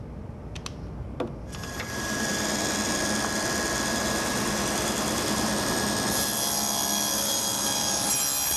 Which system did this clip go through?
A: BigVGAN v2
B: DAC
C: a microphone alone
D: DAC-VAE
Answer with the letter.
C